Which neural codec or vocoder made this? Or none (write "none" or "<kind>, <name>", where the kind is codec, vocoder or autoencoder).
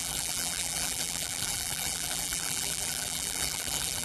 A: vocoder, BigVGAN v2